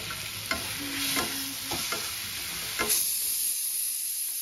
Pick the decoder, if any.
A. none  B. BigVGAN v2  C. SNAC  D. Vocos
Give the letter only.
A